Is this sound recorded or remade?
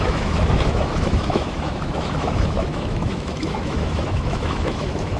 remade